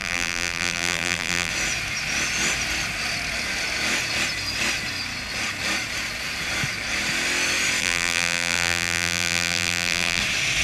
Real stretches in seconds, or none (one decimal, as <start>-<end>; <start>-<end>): 1.5-7.8; 10.2-10.6